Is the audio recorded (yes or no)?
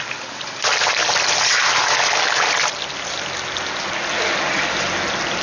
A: yes